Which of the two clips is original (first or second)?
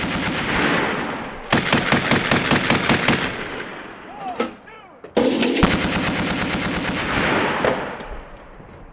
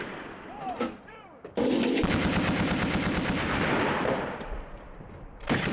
first